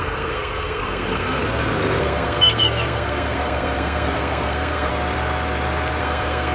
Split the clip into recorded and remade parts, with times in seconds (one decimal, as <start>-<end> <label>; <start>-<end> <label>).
0.0-1.4 remade; 1.4-2.0 recorded; 2.0-4.9 remade; 4.9-6.0 recorded; 6.0-6.5 remade